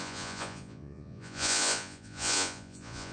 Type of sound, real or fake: fake